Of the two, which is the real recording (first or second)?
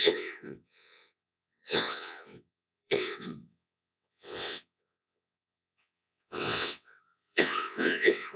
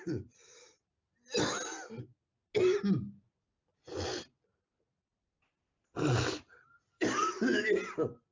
second